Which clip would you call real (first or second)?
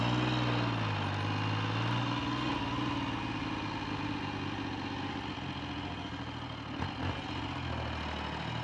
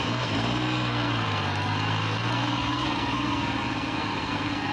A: first